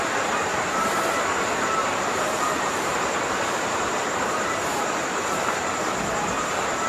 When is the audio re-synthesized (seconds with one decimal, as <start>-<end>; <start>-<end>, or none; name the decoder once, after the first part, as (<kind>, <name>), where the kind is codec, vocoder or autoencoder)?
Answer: 0.5-1.2 (vocoder, BigVGAN v2); 1.8-4.8